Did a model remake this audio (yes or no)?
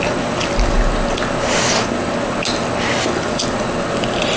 no